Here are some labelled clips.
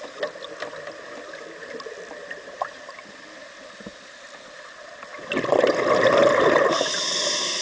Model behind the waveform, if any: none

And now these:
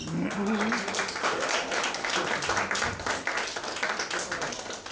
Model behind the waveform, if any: none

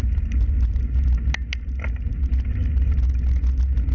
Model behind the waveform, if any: none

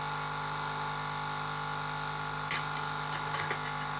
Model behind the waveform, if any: none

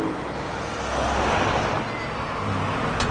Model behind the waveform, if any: none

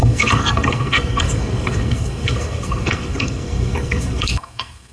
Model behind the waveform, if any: codec, SNAC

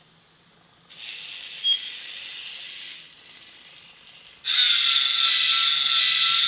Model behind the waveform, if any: none